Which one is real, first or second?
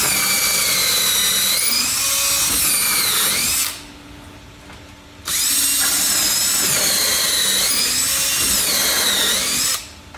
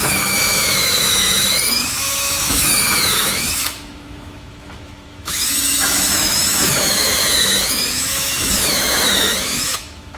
first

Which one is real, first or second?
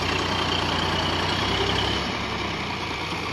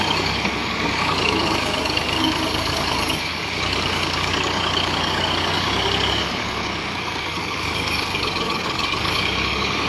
first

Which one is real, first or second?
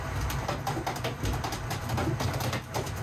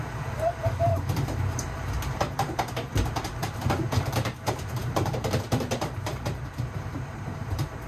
first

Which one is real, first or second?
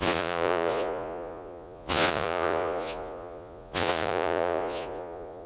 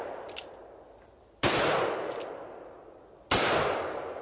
second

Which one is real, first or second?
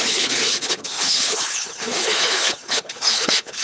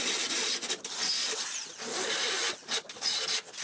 second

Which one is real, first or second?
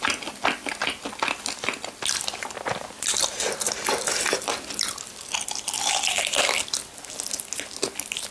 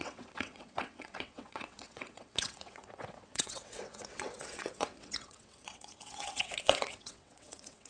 first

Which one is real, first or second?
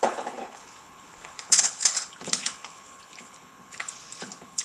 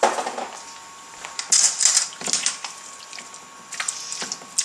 second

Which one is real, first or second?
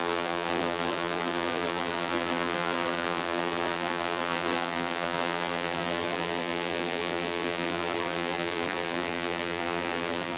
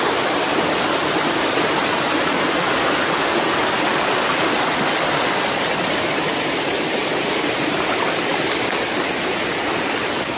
second